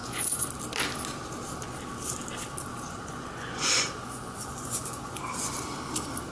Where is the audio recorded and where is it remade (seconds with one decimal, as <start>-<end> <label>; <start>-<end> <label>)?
0.0-0.5 remade; 0.5-2.7 recorded; 2.7-5.5 remade; 5.5-6.3 recorded